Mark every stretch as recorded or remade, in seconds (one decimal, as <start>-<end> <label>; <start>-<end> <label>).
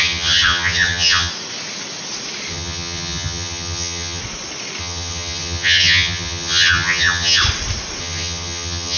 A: 0.0-1.3 remade; 1.3-2.5 recorded; 2.5-4.2 remade; 4.2-4.8 recorded; 4.8-7.4 remade; 7.4-8.0 recorded; 8.0-9.0 remade